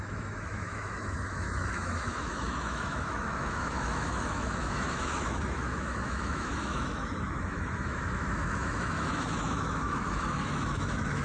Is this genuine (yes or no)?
no